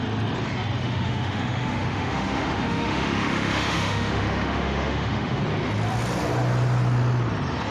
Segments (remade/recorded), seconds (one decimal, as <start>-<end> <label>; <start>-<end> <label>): 0.0-0.8 recorded; 0.8-5.4 remade; 5.4-7.7 recorded